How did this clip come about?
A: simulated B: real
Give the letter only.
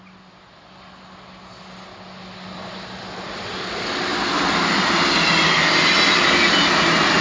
B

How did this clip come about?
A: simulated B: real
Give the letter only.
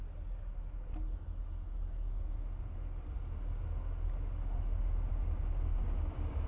B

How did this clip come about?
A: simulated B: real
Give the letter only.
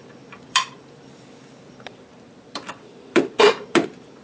A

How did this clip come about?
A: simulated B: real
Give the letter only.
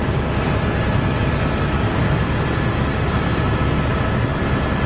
B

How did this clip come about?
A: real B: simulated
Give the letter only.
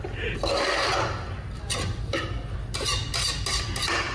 A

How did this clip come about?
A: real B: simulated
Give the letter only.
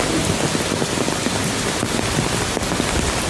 A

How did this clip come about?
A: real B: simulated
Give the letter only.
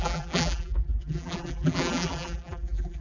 B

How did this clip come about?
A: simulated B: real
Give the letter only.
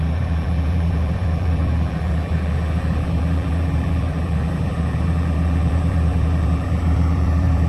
A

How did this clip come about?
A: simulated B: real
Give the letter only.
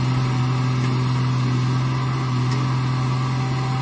B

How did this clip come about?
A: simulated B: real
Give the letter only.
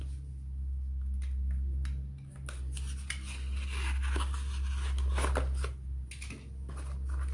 B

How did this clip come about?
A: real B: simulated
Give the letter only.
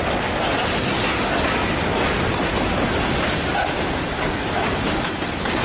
A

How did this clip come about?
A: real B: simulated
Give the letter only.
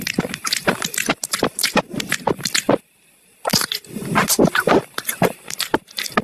A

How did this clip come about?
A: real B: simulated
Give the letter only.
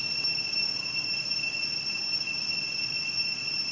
B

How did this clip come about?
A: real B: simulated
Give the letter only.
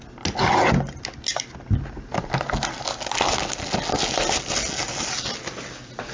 A